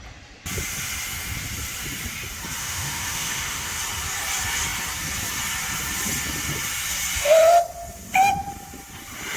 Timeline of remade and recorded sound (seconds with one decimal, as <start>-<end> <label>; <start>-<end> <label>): 0.0-2.6 recorded; 2.6-3.8 remade; 3.8-9.4 recorded